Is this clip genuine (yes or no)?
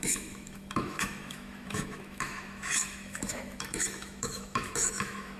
no